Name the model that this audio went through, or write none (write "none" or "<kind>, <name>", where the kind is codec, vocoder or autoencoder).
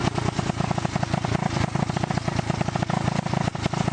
none